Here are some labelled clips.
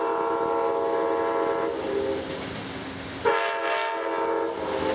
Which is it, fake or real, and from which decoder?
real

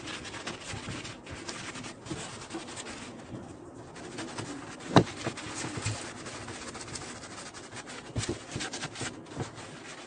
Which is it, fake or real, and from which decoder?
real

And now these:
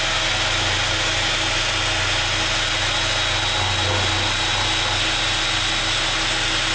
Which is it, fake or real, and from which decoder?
real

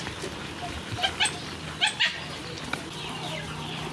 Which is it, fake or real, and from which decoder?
fake, vocoder, BigVGAN v2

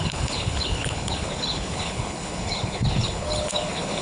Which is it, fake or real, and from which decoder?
fake, codec, HILCodec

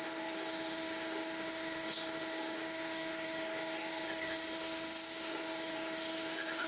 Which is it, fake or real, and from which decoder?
fake, autoencoder, DAC-VAE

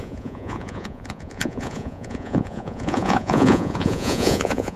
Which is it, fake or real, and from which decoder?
fake, vocoder, Vocos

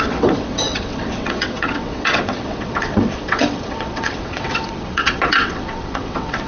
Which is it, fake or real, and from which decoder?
fake, vocoder, WaveNeXt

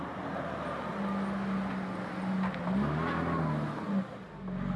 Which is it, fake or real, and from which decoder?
real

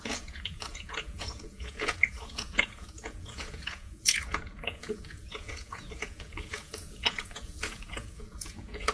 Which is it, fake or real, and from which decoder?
fake, vocoder, Vocos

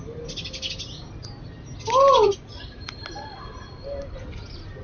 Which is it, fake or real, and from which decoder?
real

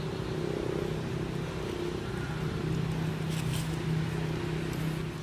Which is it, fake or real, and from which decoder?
real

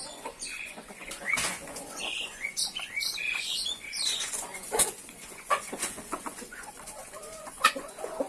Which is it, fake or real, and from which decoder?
fake, vocoder, Vocos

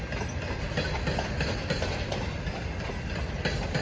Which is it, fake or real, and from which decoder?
real